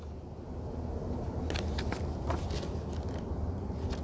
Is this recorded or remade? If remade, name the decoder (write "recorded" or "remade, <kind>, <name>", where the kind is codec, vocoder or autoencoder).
recorded